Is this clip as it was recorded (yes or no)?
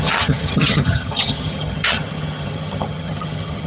no